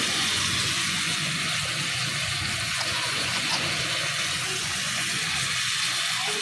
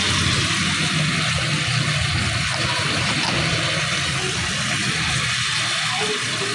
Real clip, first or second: second